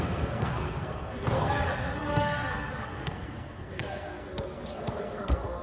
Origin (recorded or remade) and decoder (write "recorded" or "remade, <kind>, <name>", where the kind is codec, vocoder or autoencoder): remade, codec, SNAC